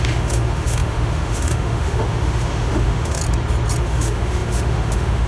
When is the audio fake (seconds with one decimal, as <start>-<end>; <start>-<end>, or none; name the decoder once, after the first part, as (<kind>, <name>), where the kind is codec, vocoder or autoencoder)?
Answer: 0.0-3.2 (autoencoder, DAC-VAE); 3.8-5.3